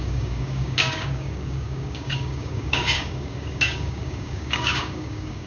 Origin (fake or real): fake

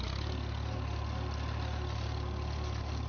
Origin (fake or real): real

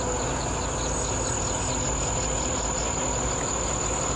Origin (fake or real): real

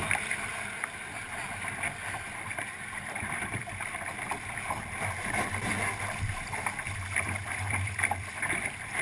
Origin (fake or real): fake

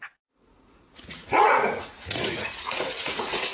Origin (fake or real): fake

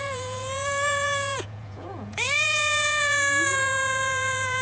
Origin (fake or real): fake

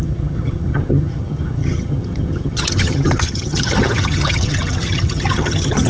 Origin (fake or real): fake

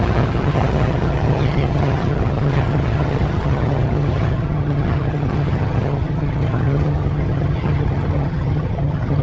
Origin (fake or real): fake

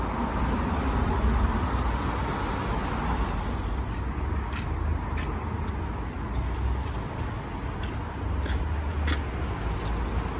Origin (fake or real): real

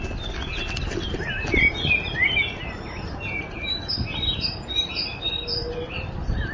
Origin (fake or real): real